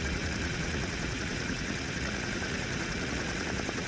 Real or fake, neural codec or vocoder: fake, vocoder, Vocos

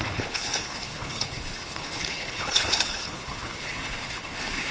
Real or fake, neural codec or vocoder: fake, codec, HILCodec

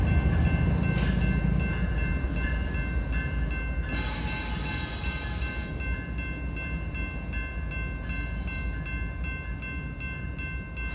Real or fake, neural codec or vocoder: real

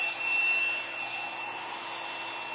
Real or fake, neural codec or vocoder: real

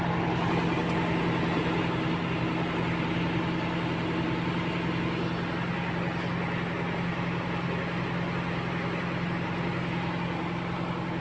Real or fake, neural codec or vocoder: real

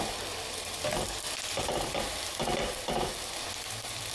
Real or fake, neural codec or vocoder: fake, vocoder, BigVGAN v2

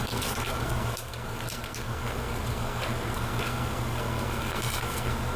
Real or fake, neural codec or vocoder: fake, codec, SNAC